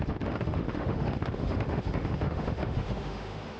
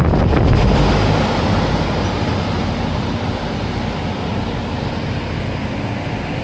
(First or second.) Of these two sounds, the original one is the second